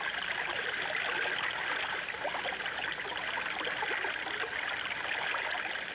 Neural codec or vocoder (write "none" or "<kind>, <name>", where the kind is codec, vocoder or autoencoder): none